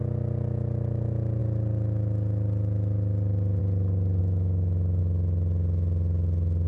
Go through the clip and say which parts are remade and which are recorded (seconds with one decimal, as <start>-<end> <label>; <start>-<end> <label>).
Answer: 0.0-4.2 recorded; 4.2-5.0 remade; 5.0-6.7 recorded